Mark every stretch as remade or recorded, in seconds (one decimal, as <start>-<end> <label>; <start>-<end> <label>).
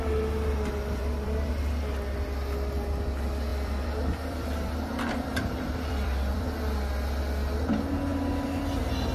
0.0-1.0 recorded; 1.0-1.5 remade; 1.5-3.5 recorded; 3.5-6.5 remade; 6.5-9.1 recorded